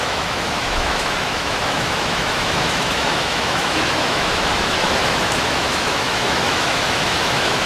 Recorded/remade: remade